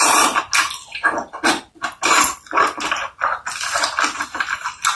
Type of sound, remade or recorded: recorded